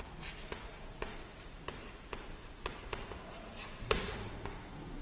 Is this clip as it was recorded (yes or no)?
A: no